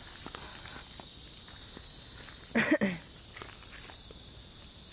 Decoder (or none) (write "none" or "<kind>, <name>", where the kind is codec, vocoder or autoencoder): none